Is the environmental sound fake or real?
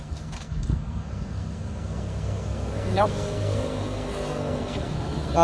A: fake